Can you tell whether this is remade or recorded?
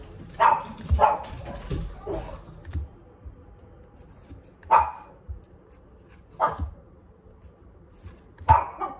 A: recorded